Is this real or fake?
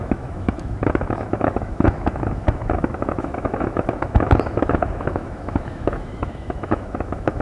fake